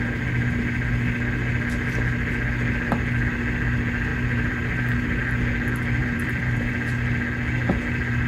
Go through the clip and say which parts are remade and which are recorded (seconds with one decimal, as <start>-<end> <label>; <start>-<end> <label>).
0.0-4.1 recorded; 4.1-5.2 remade; 5.2-6.0 recorded; 6.0-6.7 remade; 6.7-8.3 recorded